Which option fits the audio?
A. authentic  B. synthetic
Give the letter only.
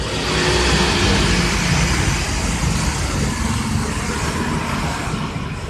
A